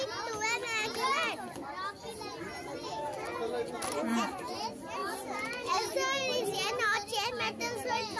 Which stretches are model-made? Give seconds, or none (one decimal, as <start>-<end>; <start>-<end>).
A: none